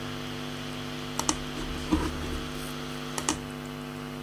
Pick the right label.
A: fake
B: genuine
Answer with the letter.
B